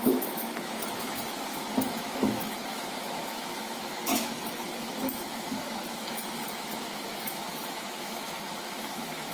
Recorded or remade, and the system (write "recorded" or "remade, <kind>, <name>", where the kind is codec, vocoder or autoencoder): remade, autoencoder, DAC-VAE